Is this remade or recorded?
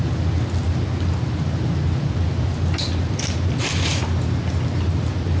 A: recorded